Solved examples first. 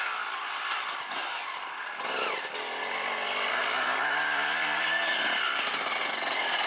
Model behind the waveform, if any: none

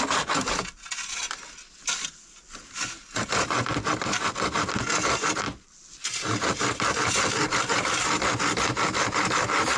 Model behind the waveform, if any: none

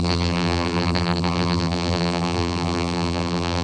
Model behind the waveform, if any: vocoder, BigVGAN v2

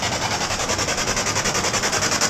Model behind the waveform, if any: none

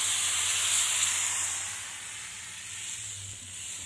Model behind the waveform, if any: none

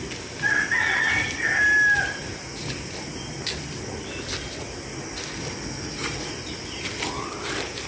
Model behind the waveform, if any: none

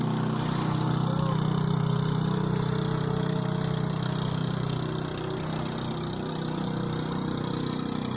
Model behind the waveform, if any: none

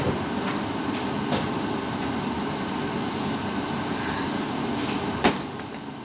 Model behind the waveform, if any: none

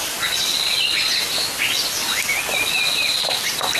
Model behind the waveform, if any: none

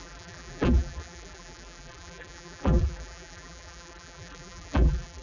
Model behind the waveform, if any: vocoder, BigVGAN v2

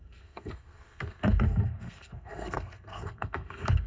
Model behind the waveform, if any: codec, SNAC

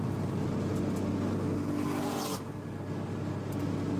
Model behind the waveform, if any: none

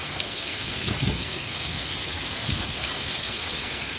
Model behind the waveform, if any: codec, SNAC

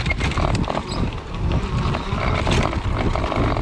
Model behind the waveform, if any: none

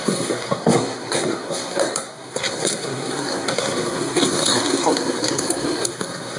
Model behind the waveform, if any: codec, SNAC